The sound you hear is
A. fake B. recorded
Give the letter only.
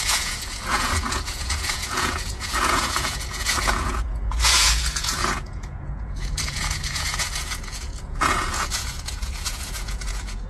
A